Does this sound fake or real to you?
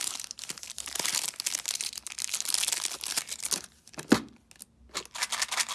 real